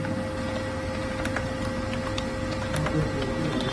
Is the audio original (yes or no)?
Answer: yes